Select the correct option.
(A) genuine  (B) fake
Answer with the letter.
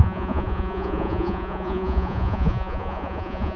B